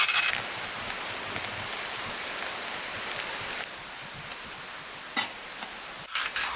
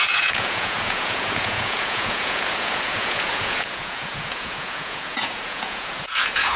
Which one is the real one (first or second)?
first